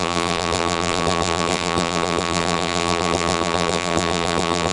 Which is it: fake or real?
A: fake